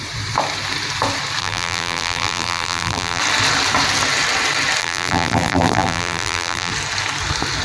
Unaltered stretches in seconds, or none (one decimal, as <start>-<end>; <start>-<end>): 0.0-1.4; 3.2-4.8; 6.7-7.6